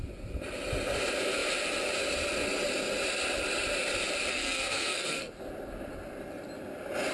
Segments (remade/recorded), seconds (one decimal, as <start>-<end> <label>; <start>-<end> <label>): 0.0-4.3 recorded; 4.3-5.3 remade; 5.3-7.1 recorded